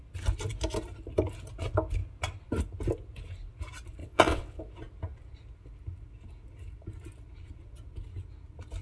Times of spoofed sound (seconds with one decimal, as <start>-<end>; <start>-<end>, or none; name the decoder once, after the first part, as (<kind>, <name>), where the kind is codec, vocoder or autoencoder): 4.0-4.6 (vocoder, WaveNeXt)